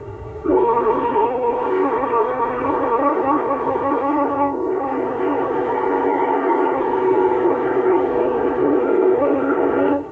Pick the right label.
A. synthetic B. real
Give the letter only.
A